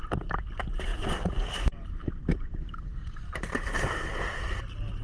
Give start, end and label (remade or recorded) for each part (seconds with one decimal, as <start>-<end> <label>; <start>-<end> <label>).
0.0-5.0 recorded